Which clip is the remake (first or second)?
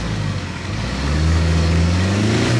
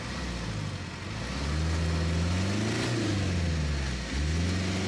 first